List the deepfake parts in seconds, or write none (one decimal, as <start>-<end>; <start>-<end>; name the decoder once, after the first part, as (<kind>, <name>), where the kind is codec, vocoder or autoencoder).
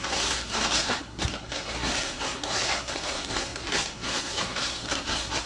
0.0-5.5 (codec, SNAC)